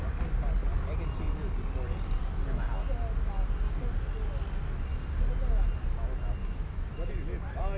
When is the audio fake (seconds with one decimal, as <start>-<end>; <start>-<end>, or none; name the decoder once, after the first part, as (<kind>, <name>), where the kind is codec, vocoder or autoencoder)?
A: 6.4-7.1 (autoencoder, DAC-VAE)